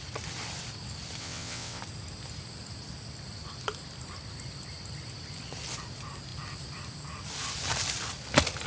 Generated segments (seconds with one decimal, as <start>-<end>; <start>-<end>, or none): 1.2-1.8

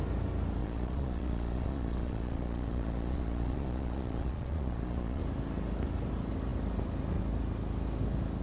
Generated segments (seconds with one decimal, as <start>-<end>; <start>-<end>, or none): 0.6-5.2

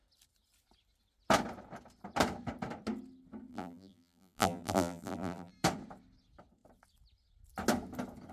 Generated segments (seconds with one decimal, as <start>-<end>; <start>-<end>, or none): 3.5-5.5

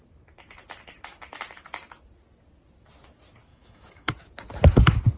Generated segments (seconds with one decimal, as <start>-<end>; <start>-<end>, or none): 3.5-4.1

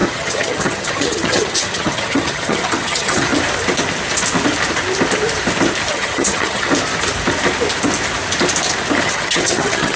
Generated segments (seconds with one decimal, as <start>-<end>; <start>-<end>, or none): 0.0-3.3; 5.9-6.7; 9.0-10.0